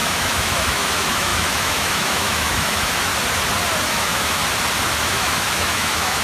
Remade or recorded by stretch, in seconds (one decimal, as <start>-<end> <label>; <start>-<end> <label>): 0.0-3.1 remade; 3.1-3.9 recorded; 3.9-4.4 remade; 4.4-5.0 recorded; 5.0-6.2 remade